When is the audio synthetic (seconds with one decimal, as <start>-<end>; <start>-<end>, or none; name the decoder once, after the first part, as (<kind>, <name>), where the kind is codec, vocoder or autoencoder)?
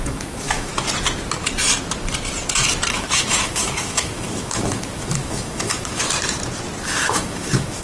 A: 0.0-0.7 (autoencoder, DAC-VAE); 2.9-6.0; 6.8-7.8